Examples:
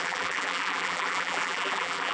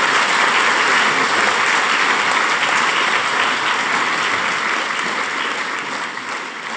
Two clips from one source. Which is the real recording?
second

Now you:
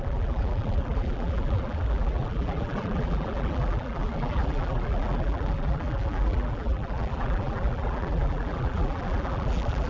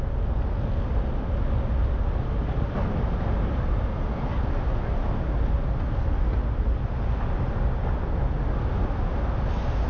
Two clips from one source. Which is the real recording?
second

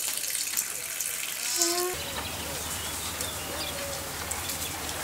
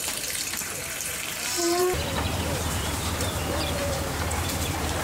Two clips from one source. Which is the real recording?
first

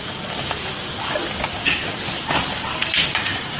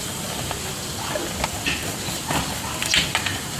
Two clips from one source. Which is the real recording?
first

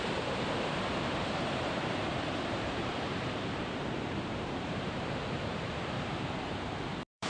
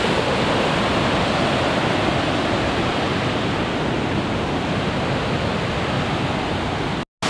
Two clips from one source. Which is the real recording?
second